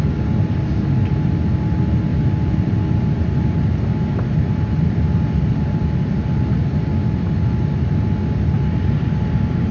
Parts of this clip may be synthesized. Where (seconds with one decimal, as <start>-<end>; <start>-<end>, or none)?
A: none